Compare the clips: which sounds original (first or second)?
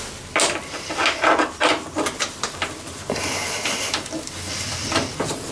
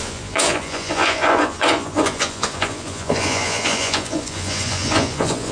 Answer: first